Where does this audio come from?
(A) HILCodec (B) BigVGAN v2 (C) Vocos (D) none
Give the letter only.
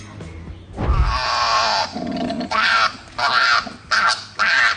D